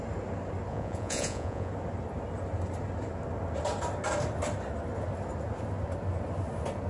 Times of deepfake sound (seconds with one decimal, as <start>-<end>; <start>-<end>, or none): 0.7-1.7